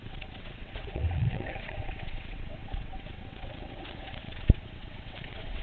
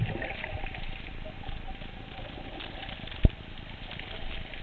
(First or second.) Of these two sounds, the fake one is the first